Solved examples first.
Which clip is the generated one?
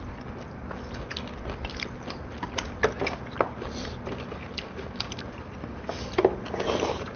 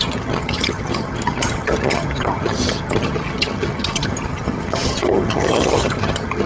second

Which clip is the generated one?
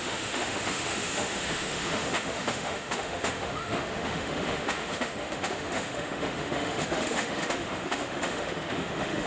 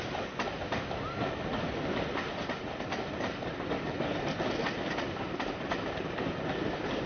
first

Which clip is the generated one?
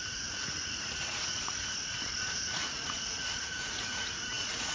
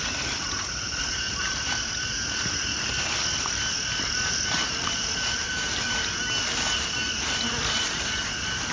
first